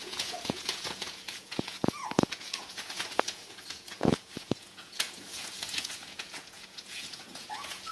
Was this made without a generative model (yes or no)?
no